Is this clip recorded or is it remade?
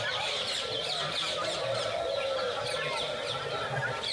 recorded